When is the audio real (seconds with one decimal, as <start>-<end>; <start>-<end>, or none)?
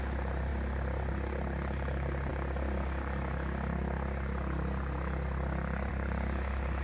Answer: 0.0-6.8